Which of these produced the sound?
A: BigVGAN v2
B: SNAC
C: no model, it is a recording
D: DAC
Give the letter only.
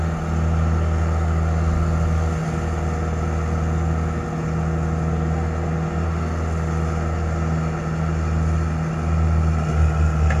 C